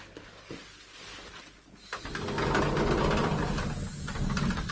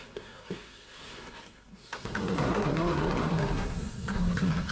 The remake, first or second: second